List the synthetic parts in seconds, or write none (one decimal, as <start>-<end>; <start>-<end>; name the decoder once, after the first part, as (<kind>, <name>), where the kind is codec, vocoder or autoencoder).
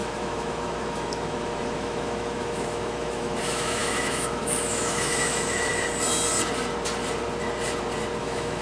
0.0-5.7 (autoencoder, DAC-VAE); 8.2-8.6